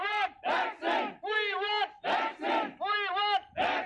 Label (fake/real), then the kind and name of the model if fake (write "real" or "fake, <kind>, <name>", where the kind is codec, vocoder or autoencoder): real